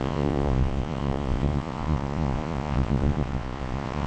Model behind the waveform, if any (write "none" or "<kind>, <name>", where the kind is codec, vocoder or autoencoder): vocoder, Vocos